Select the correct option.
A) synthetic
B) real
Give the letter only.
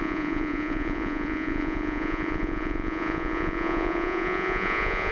A